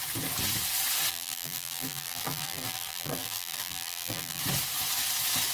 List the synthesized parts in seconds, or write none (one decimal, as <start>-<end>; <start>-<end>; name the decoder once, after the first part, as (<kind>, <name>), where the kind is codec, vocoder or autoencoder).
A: 1.1-4.4 (vocoder, BigVGAN v2)